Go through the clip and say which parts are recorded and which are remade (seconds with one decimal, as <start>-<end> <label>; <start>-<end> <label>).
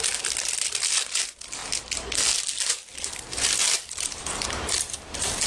0.0-5.5 recorded